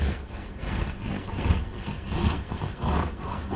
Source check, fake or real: fake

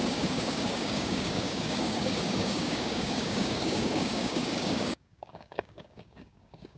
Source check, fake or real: fake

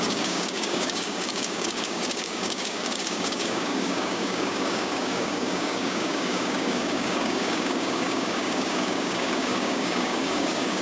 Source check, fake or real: fake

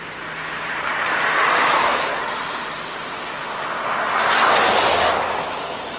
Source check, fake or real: real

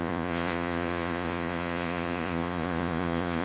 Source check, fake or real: fake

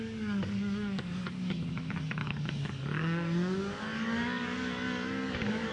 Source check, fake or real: fake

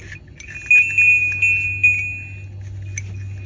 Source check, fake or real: real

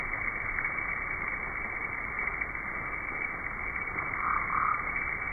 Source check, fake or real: real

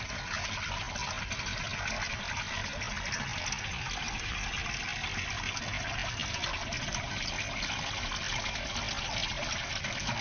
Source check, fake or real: real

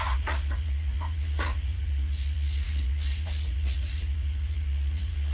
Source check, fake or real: fake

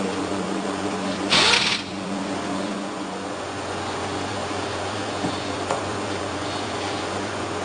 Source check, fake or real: fake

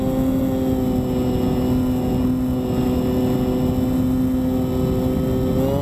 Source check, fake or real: real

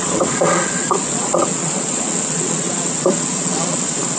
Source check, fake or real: fake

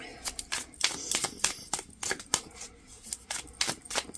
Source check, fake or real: real